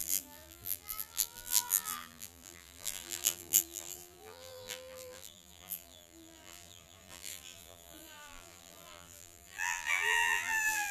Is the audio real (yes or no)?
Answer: no